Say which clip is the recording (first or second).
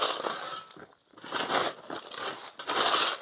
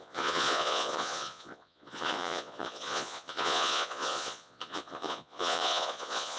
first